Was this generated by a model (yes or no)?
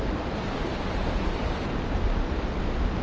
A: no